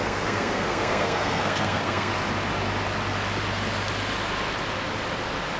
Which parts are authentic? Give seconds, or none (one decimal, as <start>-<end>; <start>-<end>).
2.1-5.6